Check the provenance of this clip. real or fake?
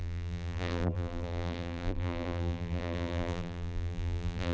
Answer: fake